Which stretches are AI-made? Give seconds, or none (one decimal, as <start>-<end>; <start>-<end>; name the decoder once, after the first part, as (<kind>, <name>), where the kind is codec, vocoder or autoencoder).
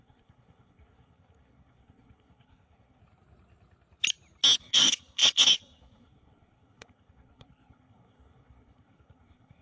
0.0-3.0 (codec, SNAC); 4.6-9.6